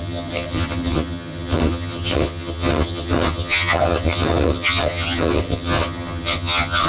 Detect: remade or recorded remade